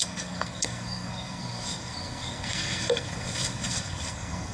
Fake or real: fake